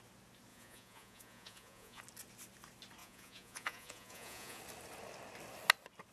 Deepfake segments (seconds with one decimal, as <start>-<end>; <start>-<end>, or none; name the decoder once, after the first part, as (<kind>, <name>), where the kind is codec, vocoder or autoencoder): 0.5-2.0 (vocoder, Vocos); 3.0-4.6